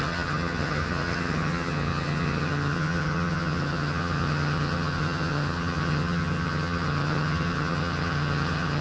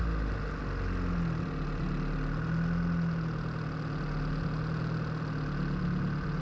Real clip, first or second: second